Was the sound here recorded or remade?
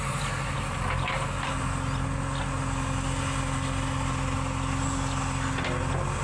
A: recorded